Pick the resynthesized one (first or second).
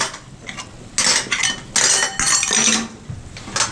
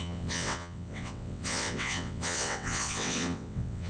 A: second